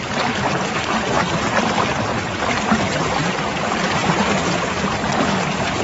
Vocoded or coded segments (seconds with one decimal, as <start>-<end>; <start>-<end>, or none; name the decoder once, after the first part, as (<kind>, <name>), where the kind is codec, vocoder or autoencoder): 2.1-2.8 (vocoder, BigVGAN v2); 4.0-5.8